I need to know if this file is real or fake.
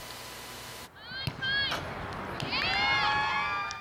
real